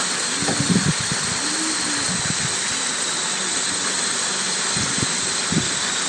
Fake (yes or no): no